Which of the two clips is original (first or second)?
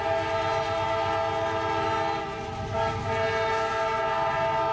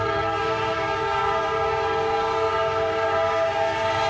first